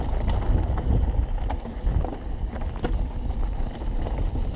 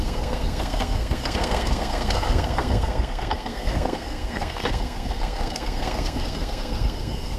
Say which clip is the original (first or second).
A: first